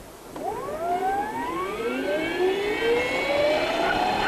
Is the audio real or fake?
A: real